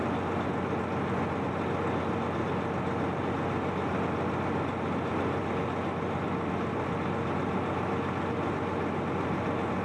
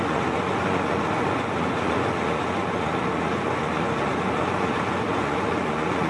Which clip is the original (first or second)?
first